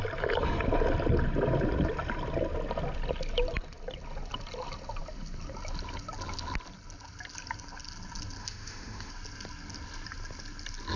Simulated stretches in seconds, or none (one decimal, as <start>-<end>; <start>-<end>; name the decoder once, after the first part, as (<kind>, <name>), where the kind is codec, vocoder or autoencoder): 8.4-9.1 (autoencoder, DAC-VAE)